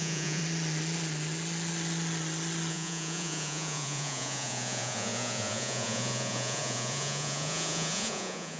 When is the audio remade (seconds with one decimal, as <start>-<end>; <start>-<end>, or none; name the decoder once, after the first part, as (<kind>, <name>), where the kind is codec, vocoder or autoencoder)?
0.0-0.4 (vocoder, Vocos); 2.7-8.6

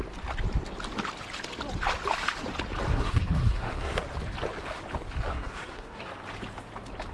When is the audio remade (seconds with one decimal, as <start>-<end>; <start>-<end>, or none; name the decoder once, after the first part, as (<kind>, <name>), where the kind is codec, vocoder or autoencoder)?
2.9-4.0 (codec, SNAC); 5.3-6.1